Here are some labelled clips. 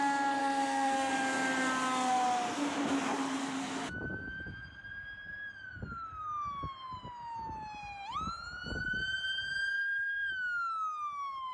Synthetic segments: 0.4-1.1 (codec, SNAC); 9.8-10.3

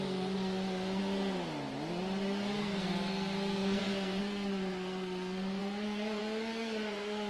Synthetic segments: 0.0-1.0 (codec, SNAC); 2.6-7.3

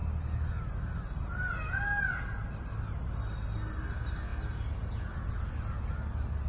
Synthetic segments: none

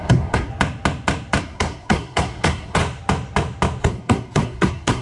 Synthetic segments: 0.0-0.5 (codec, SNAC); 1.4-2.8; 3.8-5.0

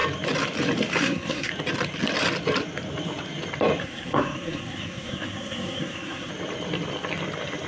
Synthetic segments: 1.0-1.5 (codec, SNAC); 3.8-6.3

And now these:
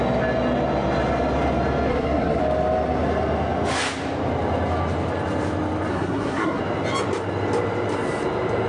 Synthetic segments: 1.9-2.4 (codec, SNAC); 5.9-6.6